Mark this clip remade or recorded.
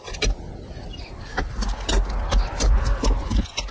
recorded